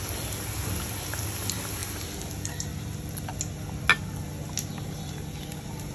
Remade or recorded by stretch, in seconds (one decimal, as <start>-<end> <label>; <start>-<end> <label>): 0.0-5.9 recorded